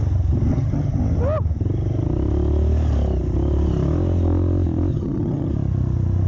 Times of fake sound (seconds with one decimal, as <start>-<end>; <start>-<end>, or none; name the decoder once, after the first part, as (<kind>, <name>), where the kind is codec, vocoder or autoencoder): 0.5-1.0 (vocoder, HiFi-GAN); 4.9-5.5